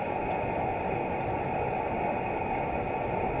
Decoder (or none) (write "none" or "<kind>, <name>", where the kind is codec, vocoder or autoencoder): none